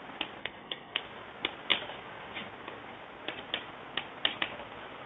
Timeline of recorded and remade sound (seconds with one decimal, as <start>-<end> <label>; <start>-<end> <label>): 0.0-0.4 recorded; 0.4-1.0 remade; 1.0-5.1 recorded

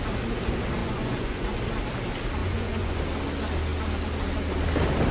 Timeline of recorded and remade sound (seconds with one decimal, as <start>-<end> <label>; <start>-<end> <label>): 0.0-0.8 recorded; 0.8-1.6 remade; 1.6-2.4 recorded; 2.4-3.0 remade; 3.0-5.1 recorded